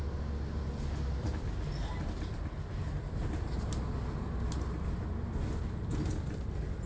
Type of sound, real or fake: real